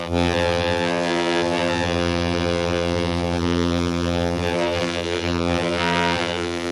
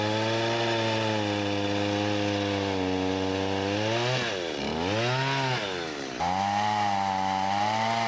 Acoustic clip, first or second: second